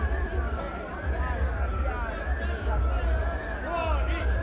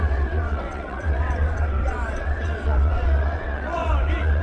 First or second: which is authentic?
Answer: first